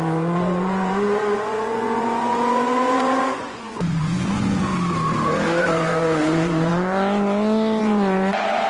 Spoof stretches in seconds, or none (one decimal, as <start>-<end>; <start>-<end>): 0.0-4.7; 5.6-6.7; 7.8-8.7